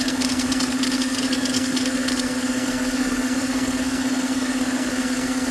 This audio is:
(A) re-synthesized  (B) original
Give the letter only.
A